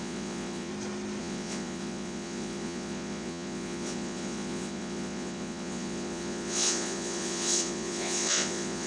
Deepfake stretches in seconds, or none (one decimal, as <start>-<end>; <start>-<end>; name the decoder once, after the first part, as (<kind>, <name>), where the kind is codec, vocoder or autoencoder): 0.0-0.7 (vocoder, Vocos); 1.2-8.9